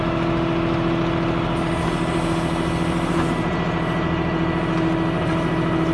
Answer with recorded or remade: recorded